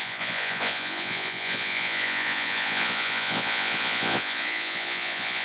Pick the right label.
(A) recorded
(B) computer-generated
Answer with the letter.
B